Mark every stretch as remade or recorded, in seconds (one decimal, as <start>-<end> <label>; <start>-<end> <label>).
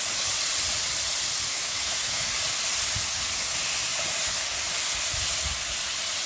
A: 0.0-1.5 recorded; 1.5-2.3 remade; 2.3-6.3 recorded